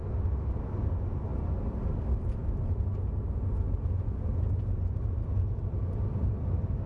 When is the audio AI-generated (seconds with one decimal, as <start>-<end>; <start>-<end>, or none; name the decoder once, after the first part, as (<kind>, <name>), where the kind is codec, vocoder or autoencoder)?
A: none